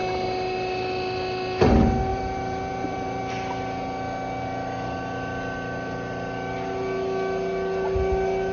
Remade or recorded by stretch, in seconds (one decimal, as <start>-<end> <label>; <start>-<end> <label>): 0.0-2.1 recorded; 2.1-3.2 remade; 3.2-8.5 recorded